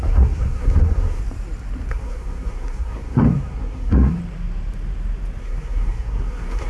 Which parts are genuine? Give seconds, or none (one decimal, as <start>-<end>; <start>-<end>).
1.2-1.9; 4.2-5.4